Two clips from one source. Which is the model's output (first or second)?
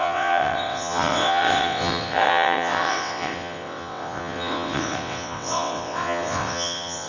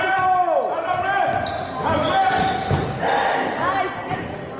first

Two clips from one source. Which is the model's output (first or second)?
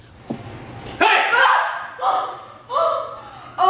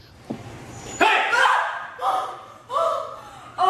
second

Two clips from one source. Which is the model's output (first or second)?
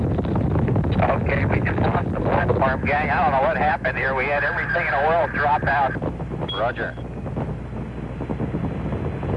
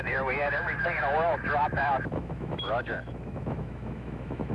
second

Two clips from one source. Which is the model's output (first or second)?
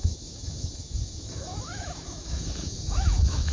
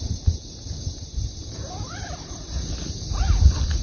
first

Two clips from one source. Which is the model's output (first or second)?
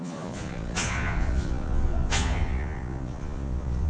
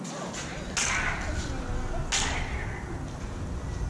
first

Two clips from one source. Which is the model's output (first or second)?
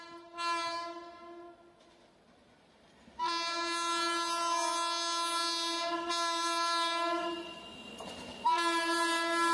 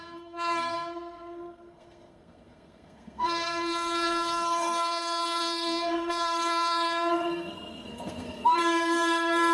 second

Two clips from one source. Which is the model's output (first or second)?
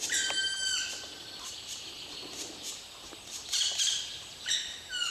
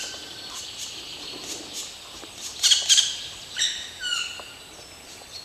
first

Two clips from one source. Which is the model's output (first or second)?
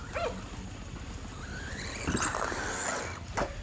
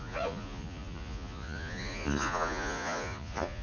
second